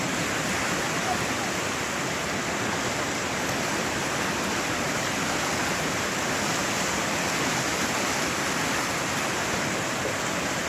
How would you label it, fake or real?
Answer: real